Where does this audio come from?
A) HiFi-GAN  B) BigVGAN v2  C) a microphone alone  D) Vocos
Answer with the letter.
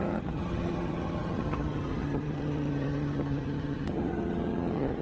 A